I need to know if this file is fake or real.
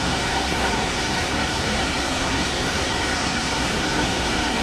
fake